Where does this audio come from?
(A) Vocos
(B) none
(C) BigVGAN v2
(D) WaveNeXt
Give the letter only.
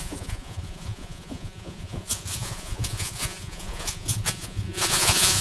A